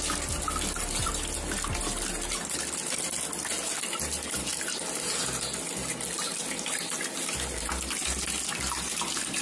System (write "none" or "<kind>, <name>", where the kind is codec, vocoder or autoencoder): none